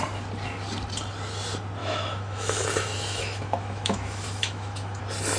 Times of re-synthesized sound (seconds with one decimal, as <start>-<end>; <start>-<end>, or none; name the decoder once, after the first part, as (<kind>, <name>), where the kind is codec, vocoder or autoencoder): 1.8-5.0 (autoencoder, DAC-VAE)